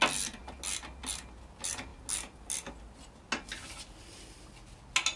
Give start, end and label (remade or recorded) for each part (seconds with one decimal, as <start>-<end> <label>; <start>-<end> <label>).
0.0-5.2 recorded